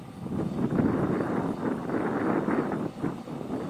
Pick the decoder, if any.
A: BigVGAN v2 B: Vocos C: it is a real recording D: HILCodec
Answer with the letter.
C